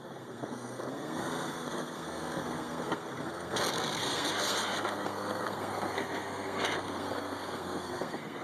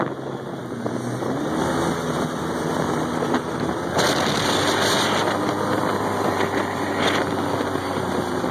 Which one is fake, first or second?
first